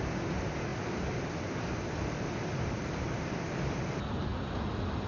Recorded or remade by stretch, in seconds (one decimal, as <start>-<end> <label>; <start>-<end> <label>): 0.0-5.1 recorded